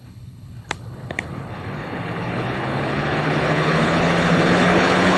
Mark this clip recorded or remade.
remade